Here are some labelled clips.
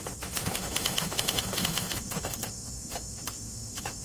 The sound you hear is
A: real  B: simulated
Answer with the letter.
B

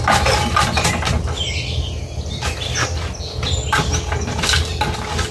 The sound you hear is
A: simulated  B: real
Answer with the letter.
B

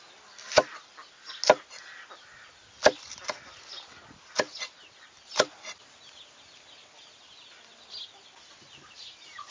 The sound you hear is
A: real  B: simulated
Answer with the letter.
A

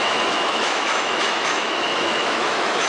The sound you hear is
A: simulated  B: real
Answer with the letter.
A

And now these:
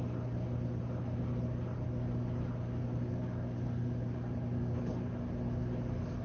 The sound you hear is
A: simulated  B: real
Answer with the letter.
B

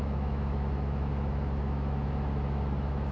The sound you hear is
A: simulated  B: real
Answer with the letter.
A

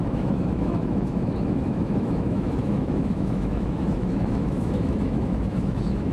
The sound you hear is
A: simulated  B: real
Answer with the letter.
A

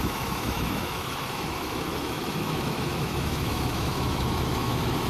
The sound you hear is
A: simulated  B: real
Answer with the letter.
A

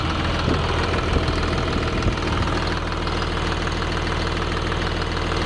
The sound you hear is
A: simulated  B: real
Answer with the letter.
B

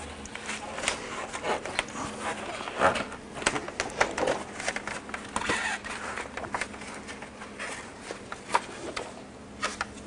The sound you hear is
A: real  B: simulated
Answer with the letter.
A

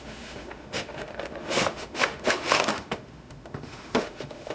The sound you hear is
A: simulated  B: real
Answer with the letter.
A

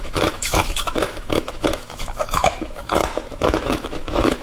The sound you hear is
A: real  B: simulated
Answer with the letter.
B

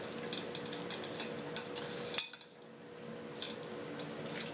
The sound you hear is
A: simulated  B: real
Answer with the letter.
B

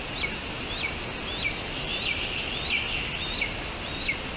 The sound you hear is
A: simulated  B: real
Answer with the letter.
B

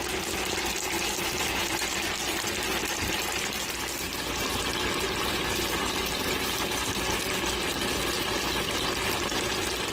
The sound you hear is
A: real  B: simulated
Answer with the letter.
A